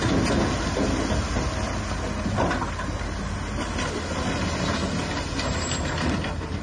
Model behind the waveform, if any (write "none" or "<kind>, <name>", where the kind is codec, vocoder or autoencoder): none